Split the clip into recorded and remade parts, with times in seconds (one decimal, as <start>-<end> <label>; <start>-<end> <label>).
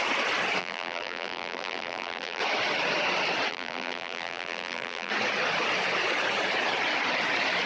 0.0-0.6 recorded; 0.6-2.4 remade; 2.4-3.5 recorded; 3.5-5.1 remade; 5.1-7.7 recorded